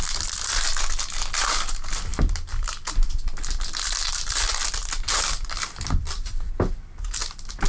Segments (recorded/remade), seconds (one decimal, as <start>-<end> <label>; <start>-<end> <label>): 0.0-2.1 recorded; 2.1-6.7 remade; 6.7-7.7 recorded